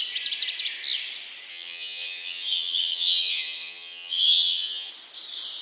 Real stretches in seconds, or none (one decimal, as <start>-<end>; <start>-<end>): 0.0-1.5; 4.9-5.6